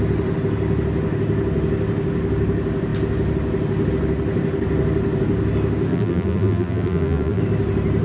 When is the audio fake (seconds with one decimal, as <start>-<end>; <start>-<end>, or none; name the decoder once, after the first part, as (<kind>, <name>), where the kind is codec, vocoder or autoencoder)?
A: 5.9-7.4 (vocoder, BigVGAN v2)